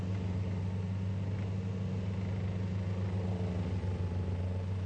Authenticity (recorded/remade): recorded